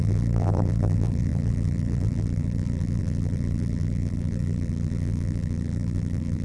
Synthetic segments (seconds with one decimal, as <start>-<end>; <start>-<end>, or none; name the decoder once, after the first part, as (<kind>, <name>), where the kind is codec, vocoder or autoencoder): 0.0-6.4 (vocoder, BigVGAN v2)